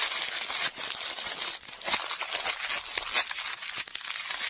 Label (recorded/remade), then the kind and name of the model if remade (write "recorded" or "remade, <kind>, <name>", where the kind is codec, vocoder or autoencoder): recorded